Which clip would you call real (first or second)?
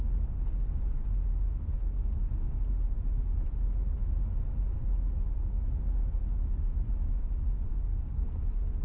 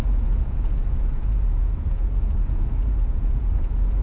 first